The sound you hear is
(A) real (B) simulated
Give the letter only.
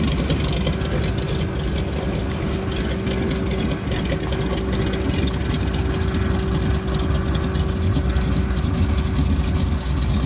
A